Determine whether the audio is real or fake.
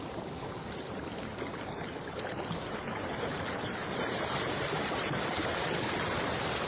real